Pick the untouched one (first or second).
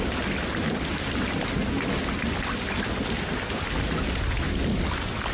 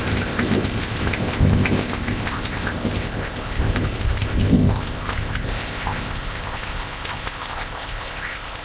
first